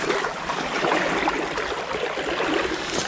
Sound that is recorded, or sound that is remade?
recorded